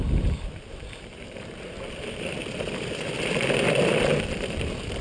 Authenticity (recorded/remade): remade